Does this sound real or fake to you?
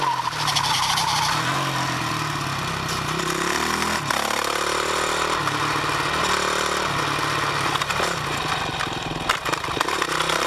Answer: real